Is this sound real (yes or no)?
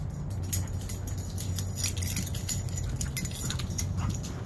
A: yes